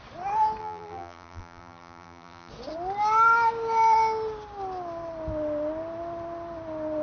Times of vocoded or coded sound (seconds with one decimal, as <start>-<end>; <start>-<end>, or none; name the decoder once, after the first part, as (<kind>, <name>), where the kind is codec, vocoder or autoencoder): 0.6-2.5 (vocoder, BigVGAN v2)